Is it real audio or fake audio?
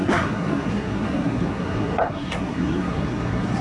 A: fake